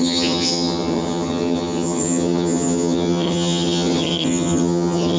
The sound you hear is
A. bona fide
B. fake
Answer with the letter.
B